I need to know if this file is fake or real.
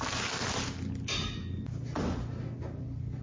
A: real